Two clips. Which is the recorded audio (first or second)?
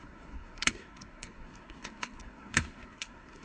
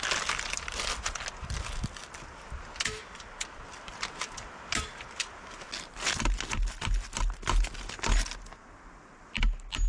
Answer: second